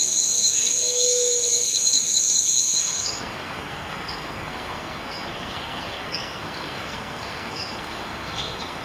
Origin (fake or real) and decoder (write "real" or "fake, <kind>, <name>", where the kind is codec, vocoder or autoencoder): fake, codec, SNAC